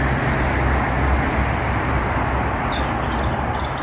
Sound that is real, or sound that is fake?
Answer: real